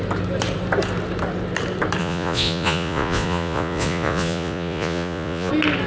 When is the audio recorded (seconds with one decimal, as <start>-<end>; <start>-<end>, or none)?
0.0-2.0; 5.5-5.9